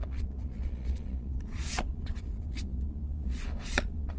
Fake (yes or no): yes